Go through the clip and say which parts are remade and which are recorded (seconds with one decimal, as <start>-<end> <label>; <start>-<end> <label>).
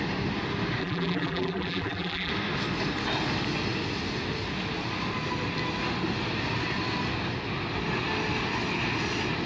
0.0-0.8 recorded; 0.8-2.3 remade; 2.3-9.5 recorded